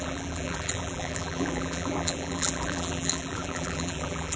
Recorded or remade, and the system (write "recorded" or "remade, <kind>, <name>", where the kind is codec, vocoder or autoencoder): remade, vocoder, BigVGAN v2